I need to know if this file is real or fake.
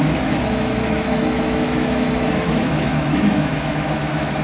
fake